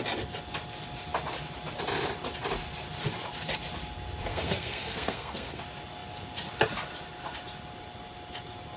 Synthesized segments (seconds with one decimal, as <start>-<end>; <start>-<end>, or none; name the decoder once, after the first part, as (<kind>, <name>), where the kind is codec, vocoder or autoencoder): 4.3-5.6 (codec, SNAC)